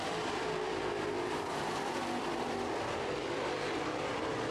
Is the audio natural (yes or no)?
no